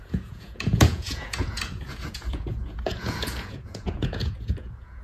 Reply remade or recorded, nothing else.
remade